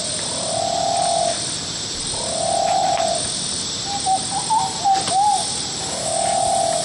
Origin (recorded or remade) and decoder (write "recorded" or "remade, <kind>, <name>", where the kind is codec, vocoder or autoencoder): recorded